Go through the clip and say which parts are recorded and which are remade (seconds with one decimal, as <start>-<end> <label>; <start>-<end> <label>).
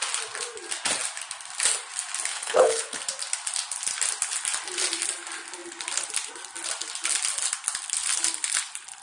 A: 0.0-2.3 recorded; 2.3-3.0 remade; 3.0-9.0 recorded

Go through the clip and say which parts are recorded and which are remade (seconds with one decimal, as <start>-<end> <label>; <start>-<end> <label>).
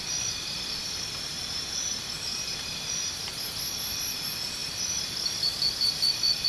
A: 0.0-2.3 recorded; 2.3-3.3 remade; 3.3-6.5 recorded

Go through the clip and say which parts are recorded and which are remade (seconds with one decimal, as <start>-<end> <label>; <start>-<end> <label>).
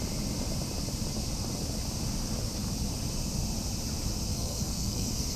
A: 0.0-4.3 recorded; 4.3-5.4 remade